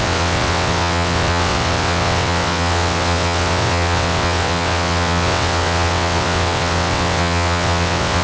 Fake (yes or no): yes